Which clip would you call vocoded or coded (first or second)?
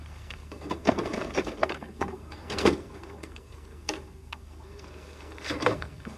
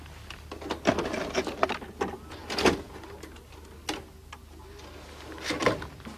first